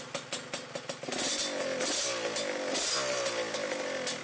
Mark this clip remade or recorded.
recorded